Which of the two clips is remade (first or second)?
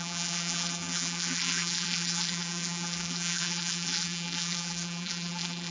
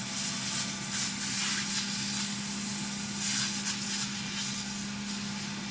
first